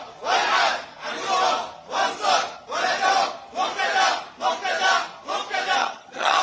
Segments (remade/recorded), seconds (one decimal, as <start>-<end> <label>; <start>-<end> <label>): 0.0-5.8 recorded; 5.8-6.4 remade